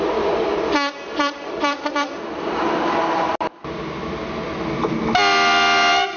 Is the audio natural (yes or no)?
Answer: yes